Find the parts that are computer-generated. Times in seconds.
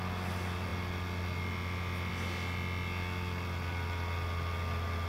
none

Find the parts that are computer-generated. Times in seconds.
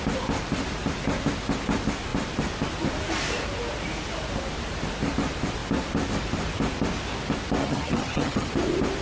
7.6-8.5 (vocoder, HiFi-GAN)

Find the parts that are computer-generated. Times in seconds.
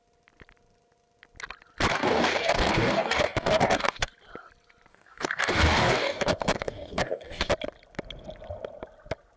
1.9-4.1 (codec, DAC); 4.9-7.5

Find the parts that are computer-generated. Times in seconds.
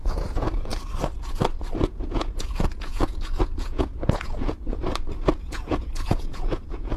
0.0-0.7 (vocoder, Vocos); 1.8-4.8; 5.4-7.0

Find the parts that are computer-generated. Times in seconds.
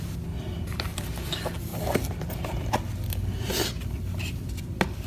none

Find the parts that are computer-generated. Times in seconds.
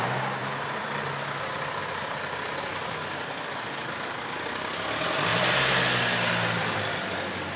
0.4-1.0 (vocoder, BigVGAN v2); 1.8-2.6; 5.3-7.1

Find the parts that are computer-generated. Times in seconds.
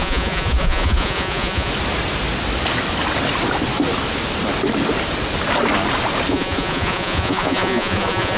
0.0-1.7 (vocoder, Vocos); 6.3-8.4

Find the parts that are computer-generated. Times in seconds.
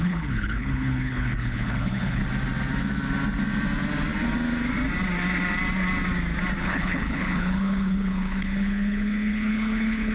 0.0-2.2 (codec, HILCodec); 6.6-10.1